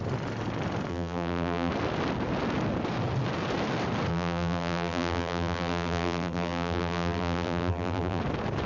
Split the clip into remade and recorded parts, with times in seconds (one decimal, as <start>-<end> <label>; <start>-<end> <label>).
0.0-0.9 recorded; 0.9-1.7 remade; 1.7-4.1 recorded; 4.1-8.2 remade; 8.2-8.7 recorded